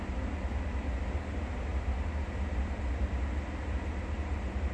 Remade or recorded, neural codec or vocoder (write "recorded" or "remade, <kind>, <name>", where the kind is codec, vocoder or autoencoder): recorded